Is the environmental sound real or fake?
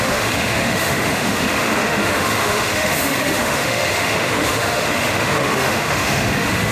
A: fake